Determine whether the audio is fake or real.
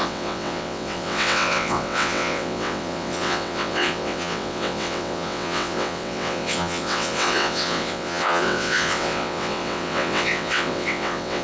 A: fake